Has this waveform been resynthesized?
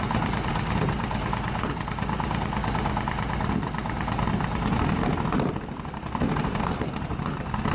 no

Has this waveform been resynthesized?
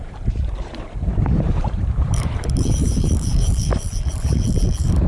yes